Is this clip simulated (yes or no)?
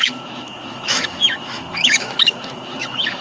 yes